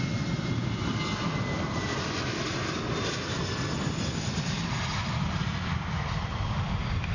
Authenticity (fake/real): real